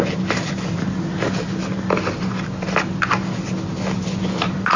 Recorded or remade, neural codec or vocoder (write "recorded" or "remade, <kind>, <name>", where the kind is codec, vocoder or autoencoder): recorded